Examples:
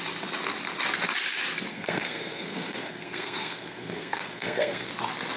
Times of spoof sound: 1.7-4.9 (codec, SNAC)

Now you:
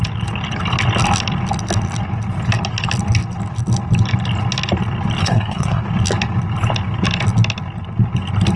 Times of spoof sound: 5.2-5.8 (codec, SNAC)

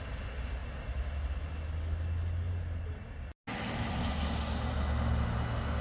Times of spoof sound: none

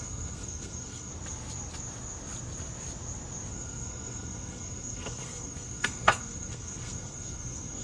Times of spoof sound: 0.0-1.1 (codec, SNAC); 3.5-7.8